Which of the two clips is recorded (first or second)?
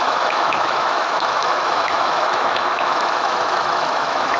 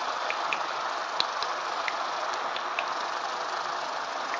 second